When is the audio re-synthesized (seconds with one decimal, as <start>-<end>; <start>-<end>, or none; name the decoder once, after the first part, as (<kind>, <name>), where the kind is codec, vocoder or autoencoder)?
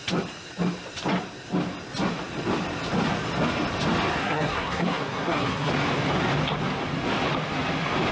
4.2-5.7 (codec, SNAC)